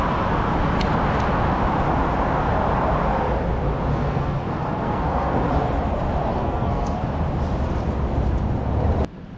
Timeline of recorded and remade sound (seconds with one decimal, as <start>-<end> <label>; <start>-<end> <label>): 0.0-3.9 recorded; 3.9-5.4 remade; 5.4-6.3 recorded; 6.3-7.1 remade; 7.1-9.4 recorded